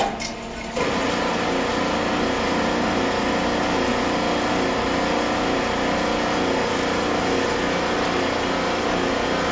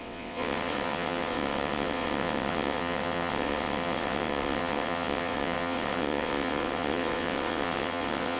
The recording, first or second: first